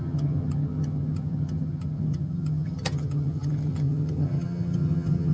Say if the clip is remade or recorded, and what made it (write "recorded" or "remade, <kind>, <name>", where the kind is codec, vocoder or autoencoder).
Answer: remade, vocoder, HiFi-GAN